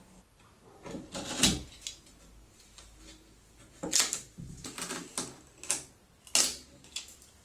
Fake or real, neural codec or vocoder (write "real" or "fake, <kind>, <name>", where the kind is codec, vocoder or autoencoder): real